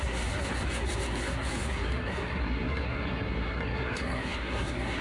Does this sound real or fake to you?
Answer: fake